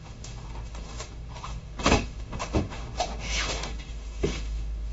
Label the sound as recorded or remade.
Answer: remade